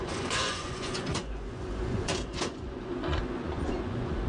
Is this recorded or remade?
remade